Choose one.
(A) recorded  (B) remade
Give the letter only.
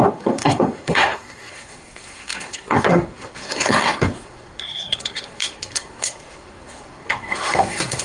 B